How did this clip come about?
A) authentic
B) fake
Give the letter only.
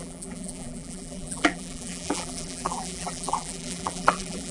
B